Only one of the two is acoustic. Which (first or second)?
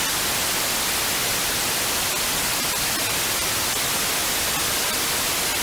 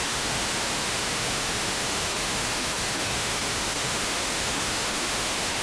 first